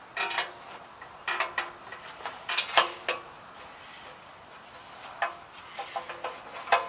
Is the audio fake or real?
real